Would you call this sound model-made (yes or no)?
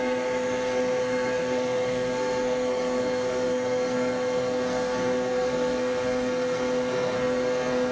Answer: yes